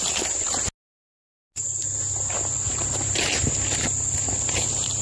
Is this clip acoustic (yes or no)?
yes